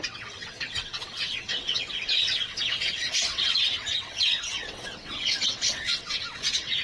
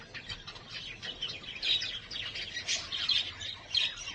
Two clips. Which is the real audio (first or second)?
second